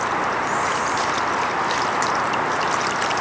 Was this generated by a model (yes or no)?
no